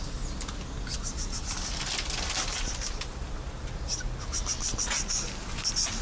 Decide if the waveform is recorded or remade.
recorded